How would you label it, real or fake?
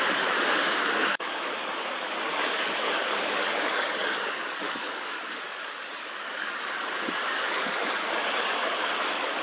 fake